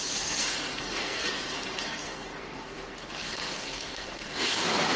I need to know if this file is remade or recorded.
remade